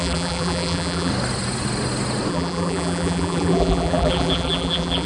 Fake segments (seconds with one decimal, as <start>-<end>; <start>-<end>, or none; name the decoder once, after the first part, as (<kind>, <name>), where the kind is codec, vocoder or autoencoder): 0.0-1.1 (vocoder, BigVGAN v2); 2.3-5.1

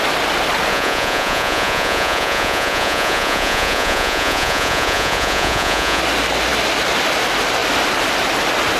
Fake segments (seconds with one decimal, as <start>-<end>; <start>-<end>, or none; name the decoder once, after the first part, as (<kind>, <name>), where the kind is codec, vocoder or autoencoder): 0.7-6.0 (vocoder, Vocos)

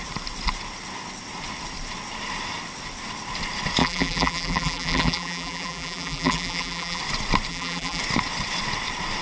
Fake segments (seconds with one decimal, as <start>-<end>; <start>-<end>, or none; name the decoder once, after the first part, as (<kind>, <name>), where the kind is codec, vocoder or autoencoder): 3.8-7.0 (vocoder, BigVGAN v2); 7.5-8.0